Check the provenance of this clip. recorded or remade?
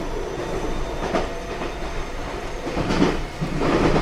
recorded